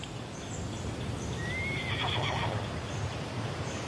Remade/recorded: recorded